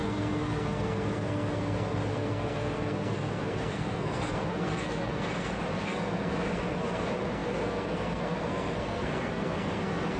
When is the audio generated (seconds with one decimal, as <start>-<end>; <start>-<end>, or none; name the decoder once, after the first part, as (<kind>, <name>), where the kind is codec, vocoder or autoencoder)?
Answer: 0.0-10.2 (codec, SNAC)